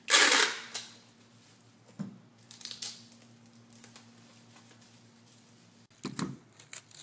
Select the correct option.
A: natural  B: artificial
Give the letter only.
A